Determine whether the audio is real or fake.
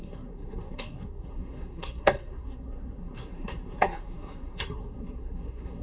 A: fake